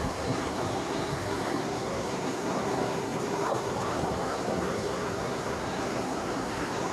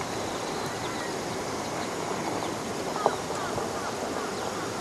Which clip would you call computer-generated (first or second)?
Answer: first